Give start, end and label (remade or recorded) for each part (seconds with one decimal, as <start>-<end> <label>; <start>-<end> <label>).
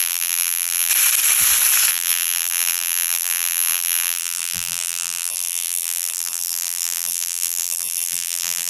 0.0-0.9 remade; 0.9-1.9 recorded; 1.9-8.7 remade